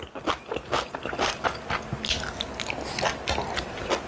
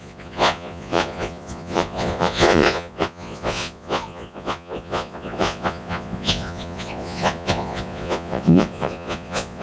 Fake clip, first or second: second